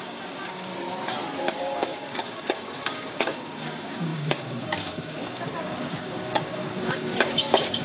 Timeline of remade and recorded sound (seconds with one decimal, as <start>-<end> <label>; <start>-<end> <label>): 0.0-0.7 remade; 0.7-1.4 recorded; 1.4-7.8 remade

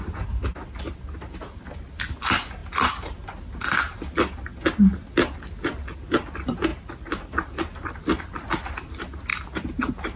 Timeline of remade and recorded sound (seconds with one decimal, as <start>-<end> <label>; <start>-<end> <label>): 0.0-6.7 recorded; 6.7-8.5 remade; 8.5-10.2 recorded

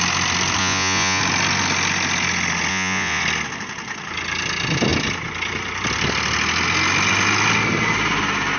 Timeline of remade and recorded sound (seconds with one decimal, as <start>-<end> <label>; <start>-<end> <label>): 0.0-0.6 recorded; 0.6-1.2 remade; 1.2-2.7 recorded; 2.7-3.2 remade; 3.2-8.6 recorded

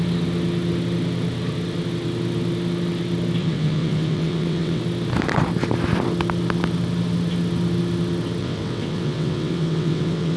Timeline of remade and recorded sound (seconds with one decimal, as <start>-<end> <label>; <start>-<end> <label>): 0.0-3.4 recorded; 3.4-4.8 remade; 4.8-8.4 recorded; 8.4-10.4 remade

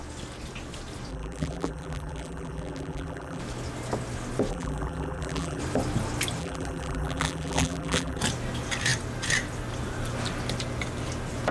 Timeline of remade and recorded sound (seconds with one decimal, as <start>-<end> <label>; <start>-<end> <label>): 0.0-1.1 recorded; 1.1-3.4 remade; 3.4-4.5 recorded; 4.5-5.6 remade; 5.6-6.4 recorded; 6.4-8.2 remade; 8.2-11.5 recorded

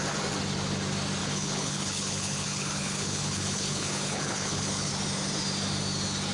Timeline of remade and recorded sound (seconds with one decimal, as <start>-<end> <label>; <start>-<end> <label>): 0.0-1.2 recorded; 1.2-4.9 remade; 4.9-6.3 recorded